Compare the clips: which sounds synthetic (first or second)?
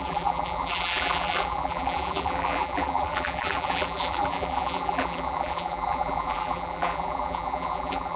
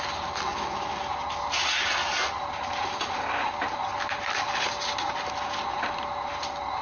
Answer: first